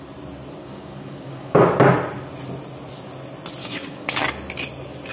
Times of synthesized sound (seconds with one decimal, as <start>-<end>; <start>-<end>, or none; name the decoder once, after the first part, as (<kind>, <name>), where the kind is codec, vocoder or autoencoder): 0.6-1.6 (codec, DAC); 3.6-4.2

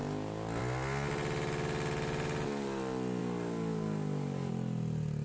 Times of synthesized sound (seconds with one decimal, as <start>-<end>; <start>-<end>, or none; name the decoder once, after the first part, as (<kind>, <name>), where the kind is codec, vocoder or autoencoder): 3.2-4.5 (codec, DAC)